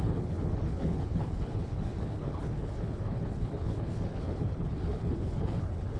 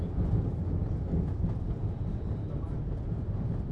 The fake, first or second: first